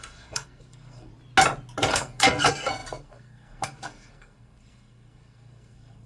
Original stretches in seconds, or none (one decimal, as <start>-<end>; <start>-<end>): 1.1-1.9